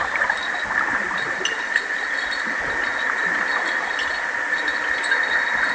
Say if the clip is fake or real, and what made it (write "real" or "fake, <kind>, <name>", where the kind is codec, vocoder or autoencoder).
fake, vocoder, BigVGAN v2